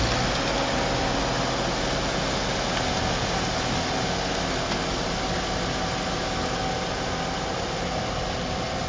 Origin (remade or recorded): recorded